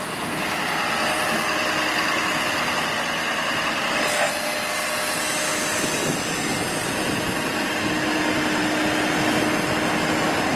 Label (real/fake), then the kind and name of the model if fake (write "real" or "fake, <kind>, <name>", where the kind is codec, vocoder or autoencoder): real